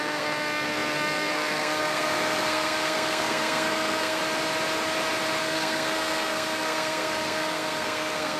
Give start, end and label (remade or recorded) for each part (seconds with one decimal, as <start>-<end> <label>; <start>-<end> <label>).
0.0-4.2 remade; 4.2-5.4 recorded; 5.4-8.4 remade

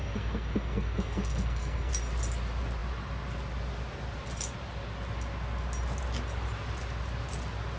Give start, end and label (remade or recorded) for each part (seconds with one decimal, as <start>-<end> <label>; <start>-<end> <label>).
0.0-1.9 remade; 1.9-7.8 recorded